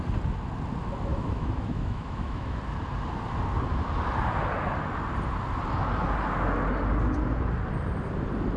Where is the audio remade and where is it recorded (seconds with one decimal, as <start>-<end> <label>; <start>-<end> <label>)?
0.0-1.1 recorded; 1.1-2.6 remade; 2.6-8.6 recorded